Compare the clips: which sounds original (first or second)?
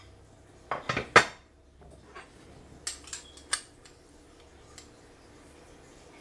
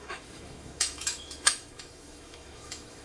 first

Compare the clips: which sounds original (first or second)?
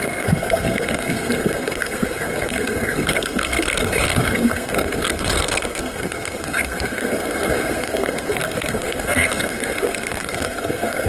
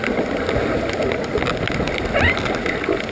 second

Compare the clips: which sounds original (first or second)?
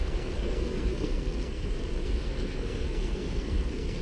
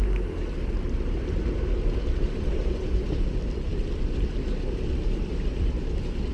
second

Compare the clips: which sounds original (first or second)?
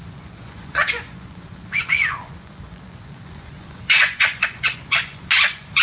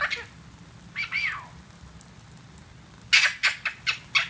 second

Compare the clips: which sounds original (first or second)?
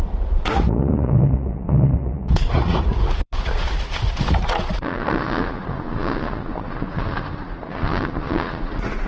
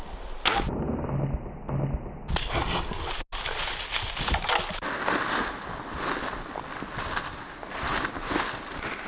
second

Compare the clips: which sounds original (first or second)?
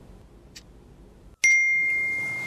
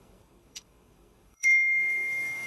first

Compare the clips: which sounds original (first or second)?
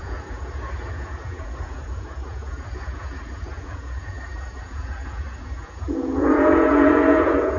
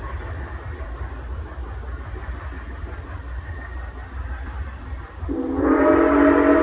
second